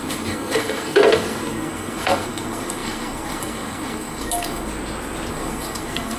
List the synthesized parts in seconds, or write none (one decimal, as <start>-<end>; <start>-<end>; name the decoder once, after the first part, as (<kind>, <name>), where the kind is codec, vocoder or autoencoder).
0.0-4.7 (codec, SNAC); 5.3-6.2